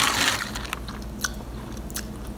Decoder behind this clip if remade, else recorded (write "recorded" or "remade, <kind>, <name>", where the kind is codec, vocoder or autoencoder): recorded